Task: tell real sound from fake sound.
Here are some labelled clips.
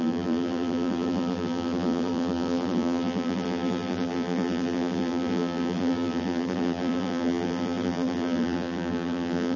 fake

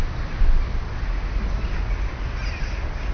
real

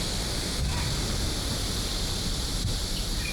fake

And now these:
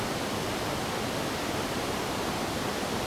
real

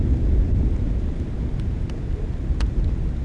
real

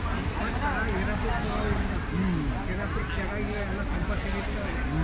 real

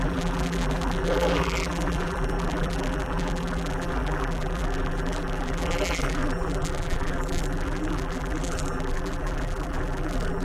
fake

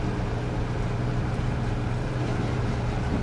fake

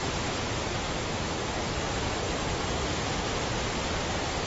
real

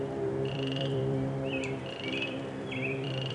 fake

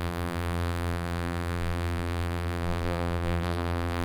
fake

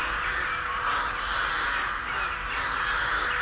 real